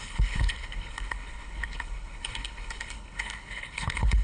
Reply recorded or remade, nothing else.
remade